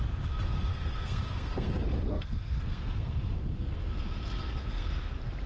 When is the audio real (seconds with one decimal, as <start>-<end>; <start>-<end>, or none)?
0.0-0.7; 3.8-4.6; 5.1-5.5

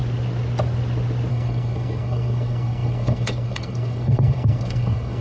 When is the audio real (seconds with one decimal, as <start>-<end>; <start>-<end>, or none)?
0.0-1.3

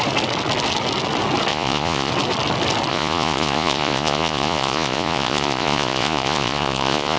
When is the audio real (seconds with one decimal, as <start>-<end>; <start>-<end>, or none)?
0.0-1.5; 2.1-2.9

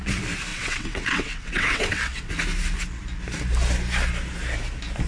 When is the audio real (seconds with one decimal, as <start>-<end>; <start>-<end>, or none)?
0.0-0.5; 2.3-5.1

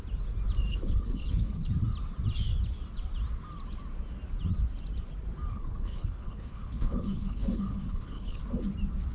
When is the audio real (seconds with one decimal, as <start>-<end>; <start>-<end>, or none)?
0.0-0.7; 1.7-5.5; 8.4-9.1